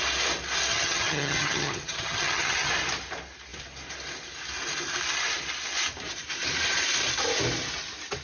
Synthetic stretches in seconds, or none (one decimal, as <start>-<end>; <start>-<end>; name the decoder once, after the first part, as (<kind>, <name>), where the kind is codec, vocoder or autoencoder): 0.7-2.7 (vocoder, HiFi-GAN)